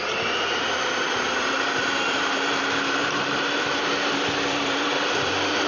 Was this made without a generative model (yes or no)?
no